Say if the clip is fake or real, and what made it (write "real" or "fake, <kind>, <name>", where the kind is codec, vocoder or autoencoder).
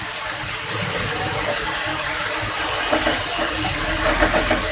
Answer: real